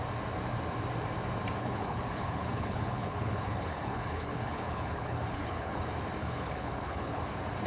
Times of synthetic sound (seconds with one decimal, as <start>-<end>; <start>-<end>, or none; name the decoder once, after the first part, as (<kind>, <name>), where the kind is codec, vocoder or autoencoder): 1.6-5.8 (codec, HILCodec); 6.2-7.2